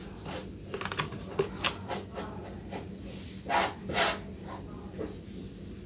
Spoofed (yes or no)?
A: no